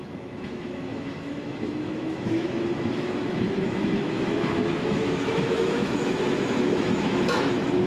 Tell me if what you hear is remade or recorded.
remade